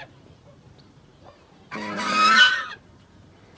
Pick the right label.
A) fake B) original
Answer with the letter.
A